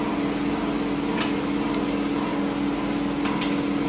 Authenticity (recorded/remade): recorded